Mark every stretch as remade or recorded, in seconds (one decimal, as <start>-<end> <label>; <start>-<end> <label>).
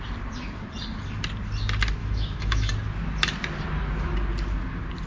0.0-2.0 recorded; 2.0-2.7 remade; 2.7-5.1 recorded